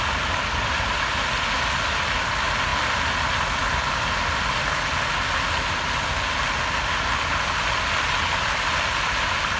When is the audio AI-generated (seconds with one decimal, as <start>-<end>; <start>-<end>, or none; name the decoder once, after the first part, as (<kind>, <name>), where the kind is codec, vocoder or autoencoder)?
none